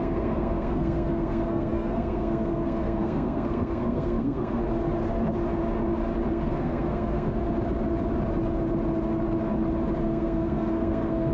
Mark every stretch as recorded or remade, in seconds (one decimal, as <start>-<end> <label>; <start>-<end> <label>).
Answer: 0.0-4.6 remade; 4.6-6.3 recorded; 6.3-7.4 remade; 7.4-10.0 recorded; 10.0-11.3 remade